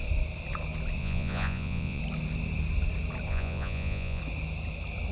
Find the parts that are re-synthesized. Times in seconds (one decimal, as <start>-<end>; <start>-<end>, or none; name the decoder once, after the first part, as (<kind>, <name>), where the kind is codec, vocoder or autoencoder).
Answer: 1.0-2.0 (vocoder, Vocos); 3.3-4.2